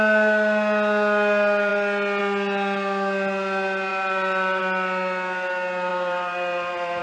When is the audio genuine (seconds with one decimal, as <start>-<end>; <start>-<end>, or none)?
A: 0.0-3.9; 4.6-5.9